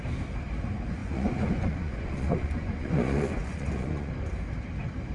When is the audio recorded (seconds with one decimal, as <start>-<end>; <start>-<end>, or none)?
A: 0.0-1.0; 4.1-5.1

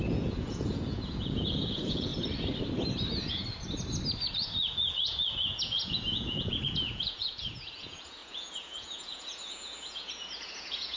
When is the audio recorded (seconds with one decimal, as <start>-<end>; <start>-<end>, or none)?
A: 2.1-4.3